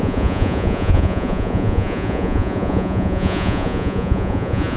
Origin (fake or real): fake